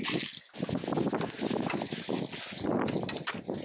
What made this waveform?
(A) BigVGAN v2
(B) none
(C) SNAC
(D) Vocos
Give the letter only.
B